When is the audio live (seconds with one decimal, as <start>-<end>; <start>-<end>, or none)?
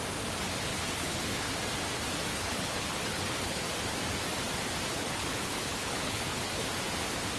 0.0-0.7; 1.5-2.3; 3.6-4.9; 6.5-7.4